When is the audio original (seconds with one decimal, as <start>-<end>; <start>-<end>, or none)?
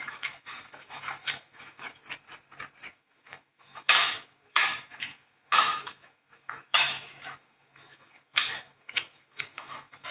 2.0-2.9